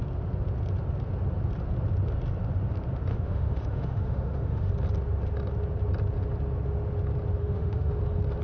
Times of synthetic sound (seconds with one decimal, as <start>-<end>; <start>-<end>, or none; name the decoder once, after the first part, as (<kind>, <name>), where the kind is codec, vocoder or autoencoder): 3.1-4.7 (autoencoder, DAC-VAE); 7.4-8.0